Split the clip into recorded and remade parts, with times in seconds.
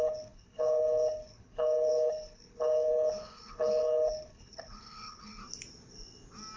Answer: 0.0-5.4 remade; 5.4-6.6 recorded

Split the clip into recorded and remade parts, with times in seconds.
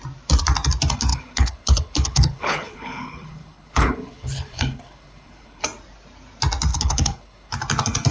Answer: 0.0-1.1 recorded; 1.1-5.6 remade; 5.6-6.7 recorded; 6.7-7.5 remade; 7.5-8.1 recorded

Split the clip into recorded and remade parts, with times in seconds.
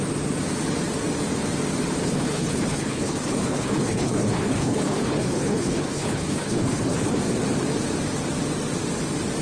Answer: 0.0-2.0 recorded; 2.0-7.2 remade; 7.2-9.4 recorded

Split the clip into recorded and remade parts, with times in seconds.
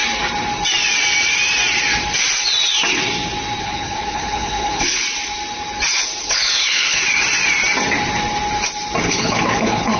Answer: 0.0-3.6 recorded; 3.6-5.0 remade; 5.0-6.2 recorded; 6.2-7.0 remade; 7.0-9.0 recorded; 9.0-10.0 remade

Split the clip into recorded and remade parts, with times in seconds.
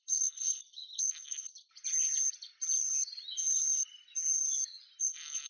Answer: 0.0-1.7 remade; 1.7-5.0 recorded; 5.0-5.5 remade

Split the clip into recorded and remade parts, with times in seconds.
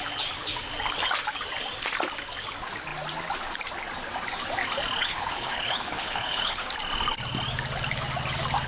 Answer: 0.0-5.0 recorded; 5.0-6.6 remade; 6.6-8.7 recorded